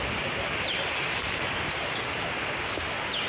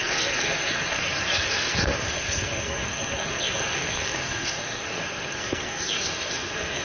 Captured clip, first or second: first